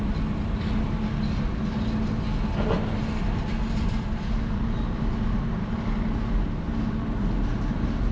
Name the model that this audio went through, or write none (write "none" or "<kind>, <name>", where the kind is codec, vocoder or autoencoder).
none